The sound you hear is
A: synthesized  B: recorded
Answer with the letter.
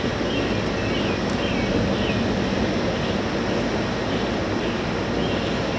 B